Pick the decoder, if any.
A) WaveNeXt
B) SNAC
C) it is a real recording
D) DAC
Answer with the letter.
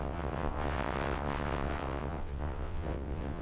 A